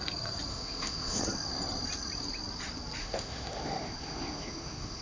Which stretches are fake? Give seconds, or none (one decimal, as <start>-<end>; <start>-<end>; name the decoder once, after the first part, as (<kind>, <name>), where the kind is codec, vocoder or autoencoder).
0.5-1.2 (autoencoder, DAC-VAE); 3.0-5.0